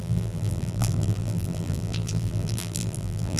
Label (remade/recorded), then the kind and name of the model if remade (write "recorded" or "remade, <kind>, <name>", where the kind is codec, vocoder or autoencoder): remade, vocoder, BigVGAN v2